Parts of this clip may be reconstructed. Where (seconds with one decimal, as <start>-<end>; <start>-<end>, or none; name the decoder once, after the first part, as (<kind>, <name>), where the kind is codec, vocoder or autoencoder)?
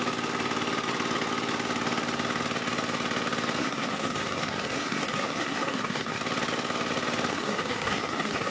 3.6-6.2 (codec, SNAC); 7.3-8.5